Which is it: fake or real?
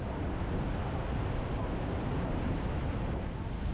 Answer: real